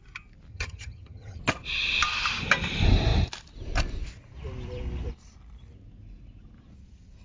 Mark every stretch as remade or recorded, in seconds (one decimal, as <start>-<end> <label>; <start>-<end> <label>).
0.0-0.5 recorded; 0.5-1.4 remade; 1.4-7.2 recorded

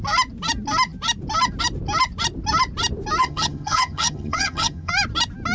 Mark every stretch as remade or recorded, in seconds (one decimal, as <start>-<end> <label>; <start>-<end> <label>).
0.0-3.2 recorded; 3.2-4.9 remade; 4.9-5.5 recorded